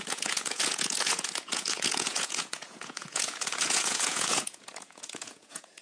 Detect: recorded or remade remade